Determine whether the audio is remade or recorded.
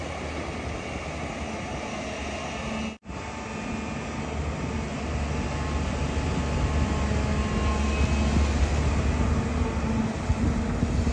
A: recorded